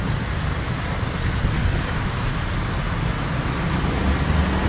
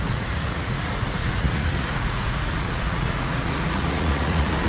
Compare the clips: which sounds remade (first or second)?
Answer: second